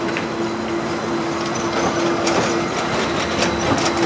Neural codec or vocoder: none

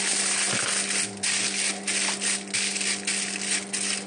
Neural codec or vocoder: none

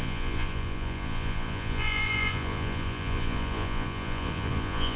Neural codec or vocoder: vocoder, Vocos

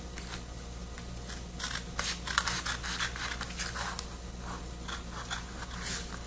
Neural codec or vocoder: none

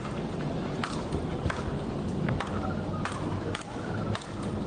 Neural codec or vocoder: none